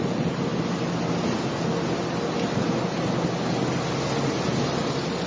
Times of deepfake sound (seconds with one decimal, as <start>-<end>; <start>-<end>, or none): none

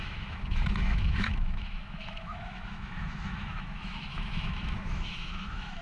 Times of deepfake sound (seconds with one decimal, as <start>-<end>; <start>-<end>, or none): 0.0-5.8

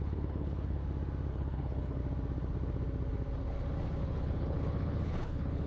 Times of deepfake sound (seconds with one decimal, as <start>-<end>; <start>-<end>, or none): 0.0-0.8; 1.3-2.0; 4.0-5.7

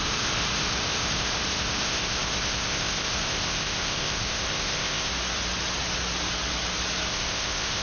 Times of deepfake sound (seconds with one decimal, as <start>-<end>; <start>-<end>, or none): 0.0-5.1; 7.1-7.8

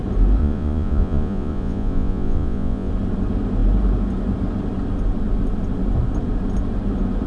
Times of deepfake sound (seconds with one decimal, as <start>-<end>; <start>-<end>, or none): 0.4-2.9